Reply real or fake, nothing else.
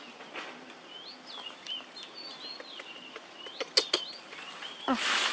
real